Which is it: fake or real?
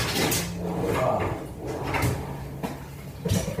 real